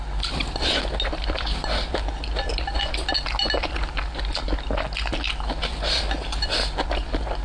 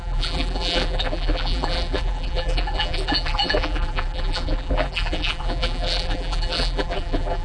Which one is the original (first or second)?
first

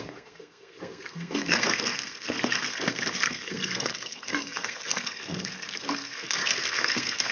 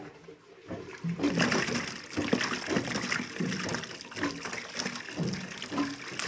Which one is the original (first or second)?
second